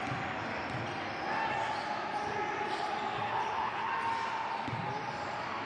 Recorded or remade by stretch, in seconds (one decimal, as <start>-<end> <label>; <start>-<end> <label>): 0.0-3.2 recorded; 3.2-3.9 remade; 3.9-5.7 recorded